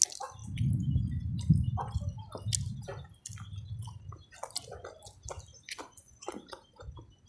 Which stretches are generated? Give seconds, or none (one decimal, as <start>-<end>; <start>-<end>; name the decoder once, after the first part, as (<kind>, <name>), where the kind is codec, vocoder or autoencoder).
5.5-6.3 (vocoder, Vocos)